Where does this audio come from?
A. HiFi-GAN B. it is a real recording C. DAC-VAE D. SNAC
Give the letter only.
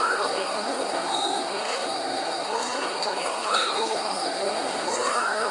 D